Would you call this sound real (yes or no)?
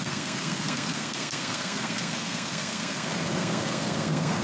no